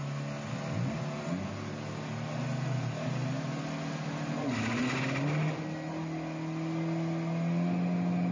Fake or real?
real